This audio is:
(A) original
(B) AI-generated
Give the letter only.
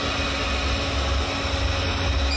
A